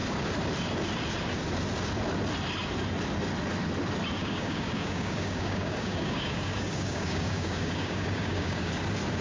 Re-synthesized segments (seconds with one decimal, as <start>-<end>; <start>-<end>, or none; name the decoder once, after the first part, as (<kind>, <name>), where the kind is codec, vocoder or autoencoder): 4.2-8.7 (codec, DAC)